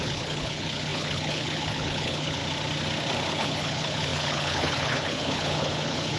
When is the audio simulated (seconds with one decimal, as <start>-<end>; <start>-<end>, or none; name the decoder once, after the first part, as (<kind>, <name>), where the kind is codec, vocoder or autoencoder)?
0.0-2.4 (codec, HILCodec); 3.3-6.2